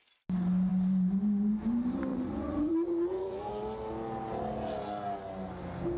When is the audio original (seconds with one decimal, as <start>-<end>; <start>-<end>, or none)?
0.0-2.1; 3.5-6.0